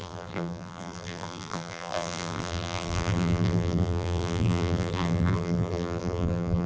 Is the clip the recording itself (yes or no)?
no